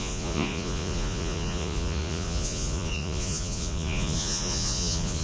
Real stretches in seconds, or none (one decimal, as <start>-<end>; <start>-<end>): none